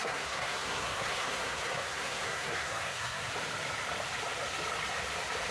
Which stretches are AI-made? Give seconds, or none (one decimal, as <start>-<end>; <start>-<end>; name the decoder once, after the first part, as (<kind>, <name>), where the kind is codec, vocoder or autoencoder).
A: 0.0-3.3 (codec, SNAC)